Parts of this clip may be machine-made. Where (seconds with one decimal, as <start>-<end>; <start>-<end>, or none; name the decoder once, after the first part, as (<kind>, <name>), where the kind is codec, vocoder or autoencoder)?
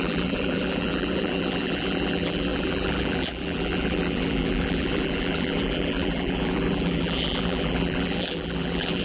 0.0-9.0 (vocoder, BigVGAN v2)